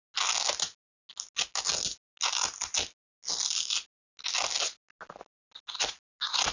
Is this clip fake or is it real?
real